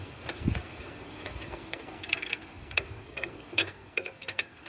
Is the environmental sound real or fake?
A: fake